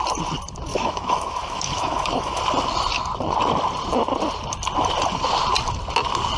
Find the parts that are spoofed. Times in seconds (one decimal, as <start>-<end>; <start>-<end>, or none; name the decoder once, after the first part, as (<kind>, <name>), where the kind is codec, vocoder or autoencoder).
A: 0.7-2.4 (autoencoder, DAC-VAE)